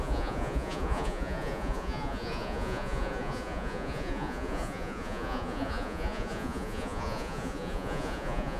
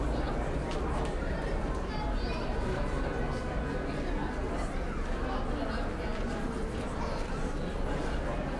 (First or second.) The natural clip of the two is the second